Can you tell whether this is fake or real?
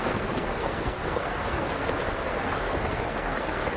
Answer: fake